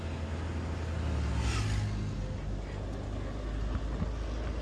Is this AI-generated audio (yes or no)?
no